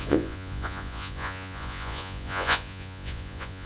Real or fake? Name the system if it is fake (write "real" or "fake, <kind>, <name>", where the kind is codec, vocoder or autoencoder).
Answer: fake, vocoder, Vocos